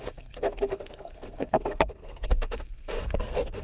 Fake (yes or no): yes